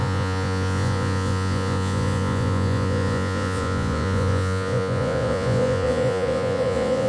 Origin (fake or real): fake